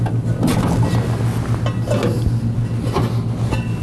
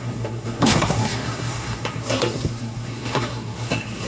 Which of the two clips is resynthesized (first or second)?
second